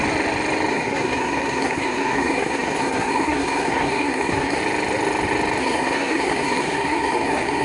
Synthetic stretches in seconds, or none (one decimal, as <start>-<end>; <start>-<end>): 0.7-4.6; 5.6-7.6